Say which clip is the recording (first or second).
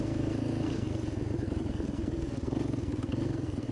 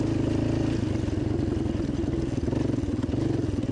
second